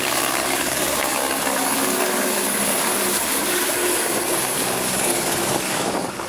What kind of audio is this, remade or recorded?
remade